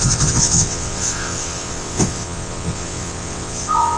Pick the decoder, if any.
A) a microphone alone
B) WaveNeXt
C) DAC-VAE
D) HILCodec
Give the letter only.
B